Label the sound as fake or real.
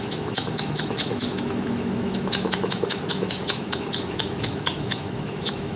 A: fake